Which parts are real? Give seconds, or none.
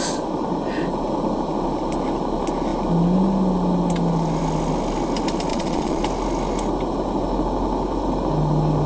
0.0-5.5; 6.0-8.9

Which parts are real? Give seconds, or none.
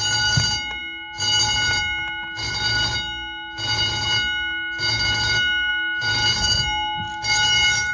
0.0-7.9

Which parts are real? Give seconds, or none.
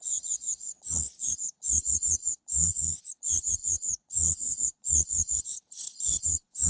none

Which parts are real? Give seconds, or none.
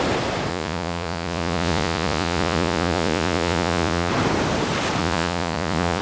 0.0-0.5; 4.1-5.0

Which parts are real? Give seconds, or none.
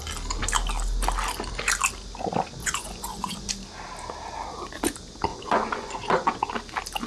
0.0-2.6; 3.5-5.3; 6.5-7.1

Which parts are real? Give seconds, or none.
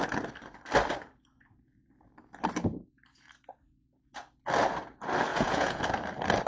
0.0-5.3; 5.8-6.5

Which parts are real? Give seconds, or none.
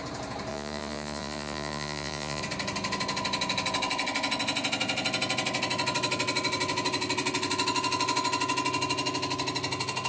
0.0-0.5; 2.4-10.1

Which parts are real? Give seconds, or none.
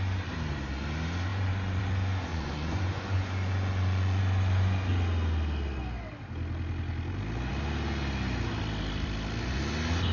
0.0-1.3; 1.8-2.3; 4.2-10.1